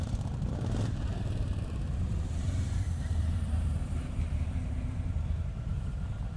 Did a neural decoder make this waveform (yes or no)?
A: yes